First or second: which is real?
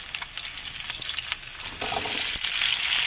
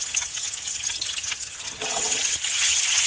first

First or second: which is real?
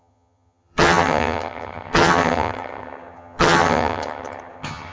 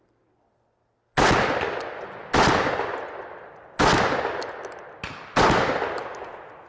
second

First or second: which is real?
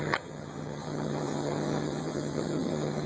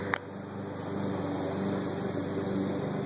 second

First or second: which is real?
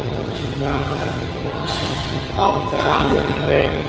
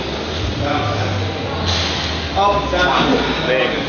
second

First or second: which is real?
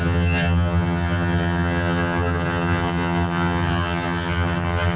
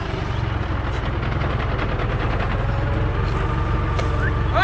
second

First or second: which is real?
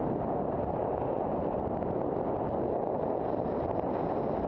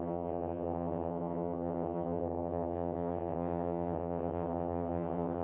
first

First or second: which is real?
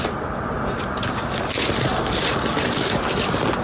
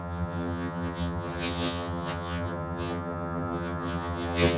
first